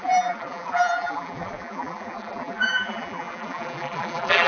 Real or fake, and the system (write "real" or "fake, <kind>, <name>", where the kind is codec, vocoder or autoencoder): fake, vocoder, BigVGAN v2